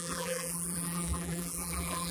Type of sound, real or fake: fake